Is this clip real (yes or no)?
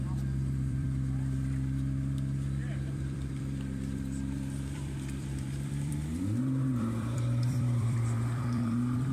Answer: no